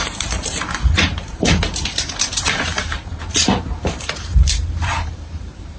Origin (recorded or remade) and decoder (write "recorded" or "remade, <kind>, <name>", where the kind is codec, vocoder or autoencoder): remade, vocoder, BigVGAN v2